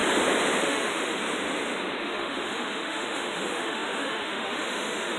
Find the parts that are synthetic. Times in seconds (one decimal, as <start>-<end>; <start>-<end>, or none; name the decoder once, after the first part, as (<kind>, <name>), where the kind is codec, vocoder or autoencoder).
0.6-1.2 (autoencoder, DAC-VAE); 2.0-5.2